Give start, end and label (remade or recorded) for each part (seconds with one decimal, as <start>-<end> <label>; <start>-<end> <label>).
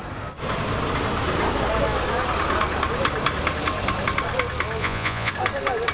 0.0-4.8 recorded; 4.8-5.3 remade; 5.3-5.9 recorded